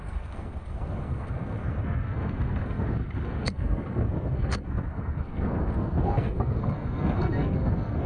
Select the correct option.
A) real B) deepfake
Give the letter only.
B